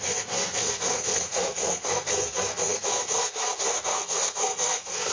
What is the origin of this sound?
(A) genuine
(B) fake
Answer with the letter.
B